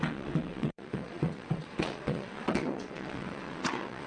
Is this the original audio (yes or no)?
no